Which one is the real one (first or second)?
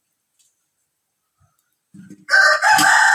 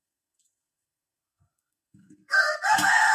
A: first